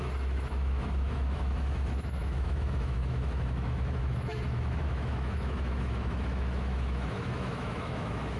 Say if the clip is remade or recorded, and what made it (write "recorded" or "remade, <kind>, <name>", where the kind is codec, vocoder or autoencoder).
remade, autoencoder, DAC-VAE